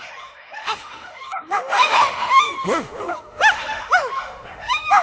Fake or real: fake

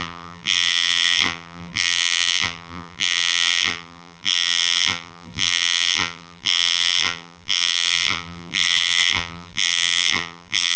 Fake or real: fake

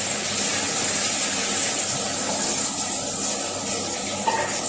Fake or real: real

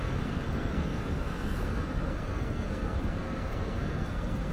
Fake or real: fake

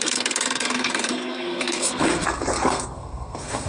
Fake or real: fake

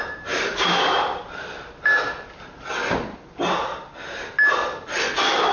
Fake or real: real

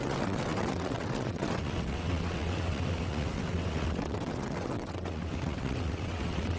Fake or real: fake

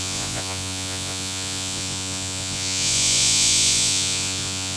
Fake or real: fake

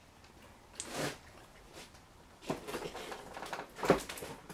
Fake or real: real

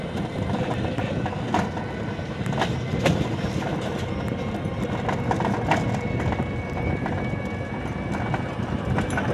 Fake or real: real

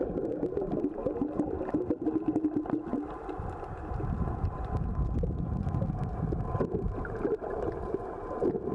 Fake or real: real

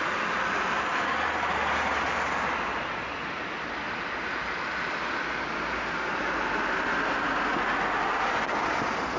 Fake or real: real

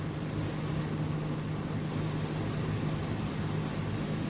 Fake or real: real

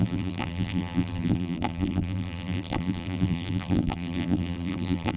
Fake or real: fake